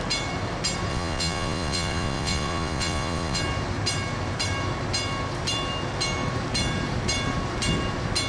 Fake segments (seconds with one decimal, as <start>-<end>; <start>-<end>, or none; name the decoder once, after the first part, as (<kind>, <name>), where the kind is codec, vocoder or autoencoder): 0.9-3.4 (vocoder, Vocos)